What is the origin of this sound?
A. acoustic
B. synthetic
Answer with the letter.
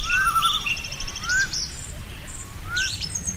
B